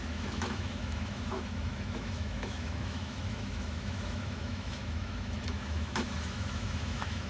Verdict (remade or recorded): remade